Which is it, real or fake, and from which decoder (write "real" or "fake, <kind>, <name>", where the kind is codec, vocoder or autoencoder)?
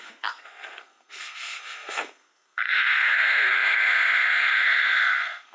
fake, codec, SNAC